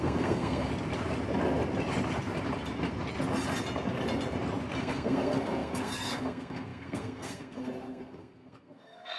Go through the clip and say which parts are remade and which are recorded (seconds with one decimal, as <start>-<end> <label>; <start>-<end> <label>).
0.0-0.7 remade; 0.7-4.8 recorded; 4.8-9.2 remade